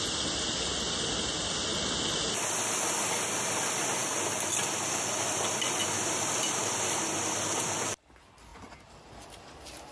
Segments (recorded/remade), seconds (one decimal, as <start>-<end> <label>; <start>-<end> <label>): 0.0-9.9 recorded